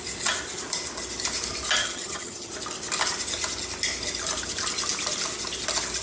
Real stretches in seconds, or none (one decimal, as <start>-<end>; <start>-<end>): 0.0-1.8; 2.5-6.0